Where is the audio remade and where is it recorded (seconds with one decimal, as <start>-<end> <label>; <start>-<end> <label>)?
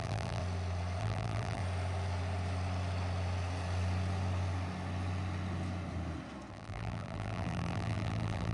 0.0-0.4 remade; 0.4-1.0 recorded; 1.0-1.6 remade; 1.6-6.5 recorded; 6.5-8.5 remade